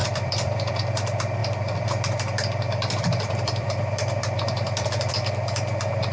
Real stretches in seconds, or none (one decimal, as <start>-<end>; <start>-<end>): 0.7-1.4; 5.1-6.1